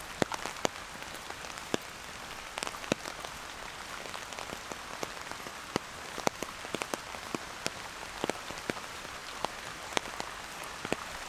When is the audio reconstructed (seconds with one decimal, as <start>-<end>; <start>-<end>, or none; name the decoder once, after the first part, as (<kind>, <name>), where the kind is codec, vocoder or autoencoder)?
none

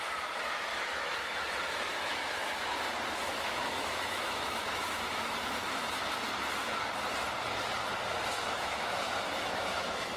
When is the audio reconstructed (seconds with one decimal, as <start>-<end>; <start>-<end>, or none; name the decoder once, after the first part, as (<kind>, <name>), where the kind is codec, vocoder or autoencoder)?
0.7-1.4 (autoencoder, DAC-VAE); 1.9-2.7; 3.3-6.0; 8.4-10.2

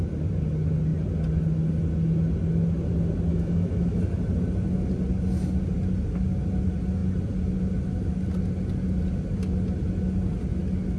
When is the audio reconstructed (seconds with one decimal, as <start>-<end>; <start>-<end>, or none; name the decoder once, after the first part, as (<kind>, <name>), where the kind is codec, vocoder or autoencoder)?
3.3-4.0 (autoencoder, DAC-VAE)